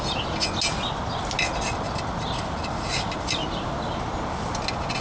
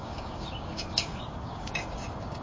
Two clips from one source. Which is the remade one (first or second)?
second